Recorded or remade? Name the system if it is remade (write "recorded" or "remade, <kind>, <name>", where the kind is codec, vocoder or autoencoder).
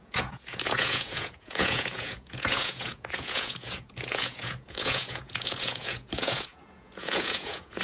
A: remade, vocoder, Vocos